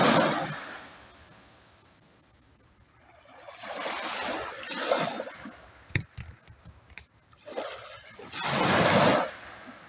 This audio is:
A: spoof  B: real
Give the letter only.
B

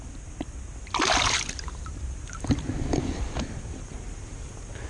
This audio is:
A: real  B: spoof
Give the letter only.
A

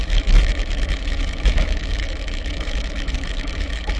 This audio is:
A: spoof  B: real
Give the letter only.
A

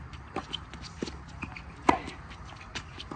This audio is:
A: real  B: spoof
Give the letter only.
A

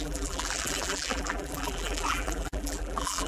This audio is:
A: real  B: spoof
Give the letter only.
B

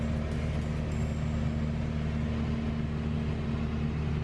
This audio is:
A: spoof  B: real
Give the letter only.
B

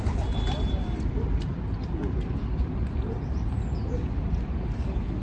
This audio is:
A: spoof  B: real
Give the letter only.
B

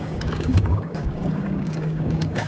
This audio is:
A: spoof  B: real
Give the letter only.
A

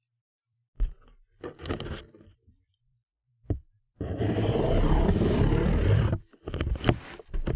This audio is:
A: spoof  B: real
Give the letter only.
A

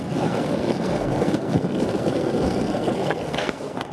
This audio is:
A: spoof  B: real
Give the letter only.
A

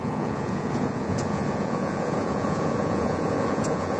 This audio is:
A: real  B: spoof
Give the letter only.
B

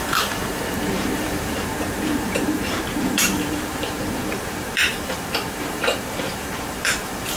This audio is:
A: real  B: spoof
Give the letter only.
B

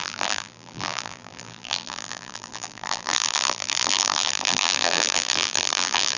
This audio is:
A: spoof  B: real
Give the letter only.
A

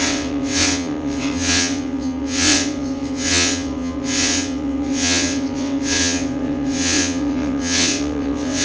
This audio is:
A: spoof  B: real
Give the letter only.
A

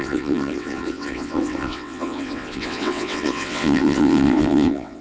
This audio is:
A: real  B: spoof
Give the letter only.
B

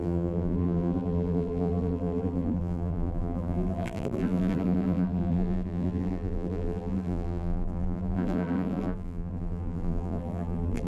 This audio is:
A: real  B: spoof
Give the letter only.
B